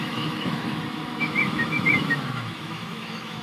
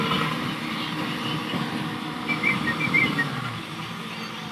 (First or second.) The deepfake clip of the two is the first